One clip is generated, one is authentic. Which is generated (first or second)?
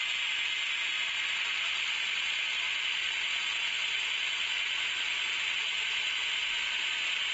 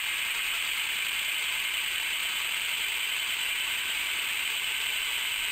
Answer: second